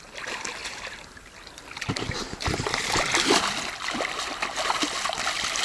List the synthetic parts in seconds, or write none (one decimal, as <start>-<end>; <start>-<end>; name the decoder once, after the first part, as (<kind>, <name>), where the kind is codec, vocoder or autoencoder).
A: 0.0-5.6 (vocoder, BigVGAN v2)